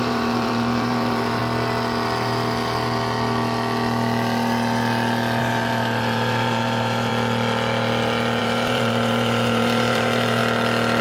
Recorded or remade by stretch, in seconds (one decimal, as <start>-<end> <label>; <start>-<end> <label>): 0.0-1.4 remade; 1.4-5.4 recorded; 5.4-7.1 remade; 7.1-8.4 recorded; 8.4-10.4 remade; 10.4-11.0 recorded